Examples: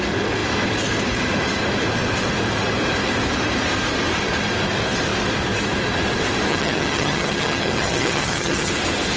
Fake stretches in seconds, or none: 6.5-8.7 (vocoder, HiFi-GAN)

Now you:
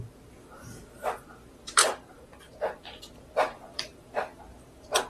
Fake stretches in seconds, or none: 0.0-5.1 (vocoder, BigVGAN v2)